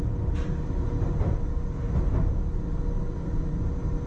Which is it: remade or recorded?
recorded